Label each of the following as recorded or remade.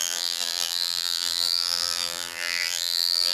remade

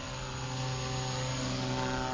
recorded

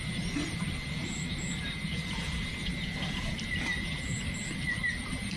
recorded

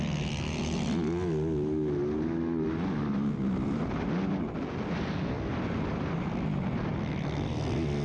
recorded